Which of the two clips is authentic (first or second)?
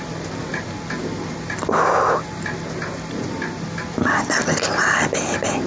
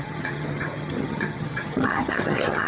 first